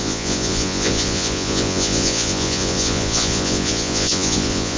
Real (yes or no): no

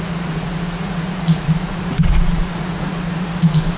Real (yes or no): no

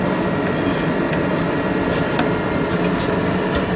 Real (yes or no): yes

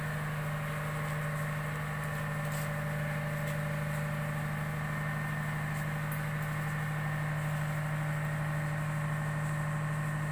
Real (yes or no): yes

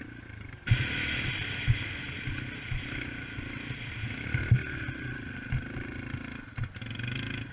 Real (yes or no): yes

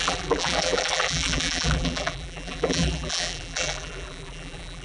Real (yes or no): no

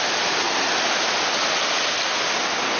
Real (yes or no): yes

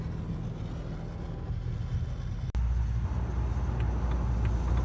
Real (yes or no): yes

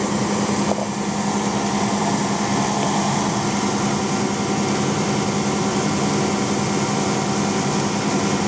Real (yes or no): yes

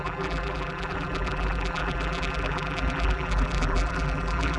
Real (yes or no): no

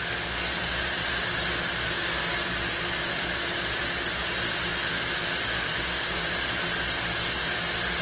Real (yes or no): yes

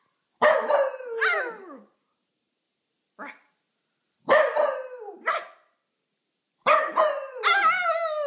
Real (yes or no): yes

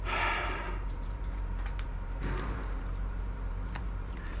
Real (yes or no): no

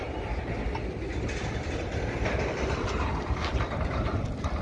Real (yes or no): yes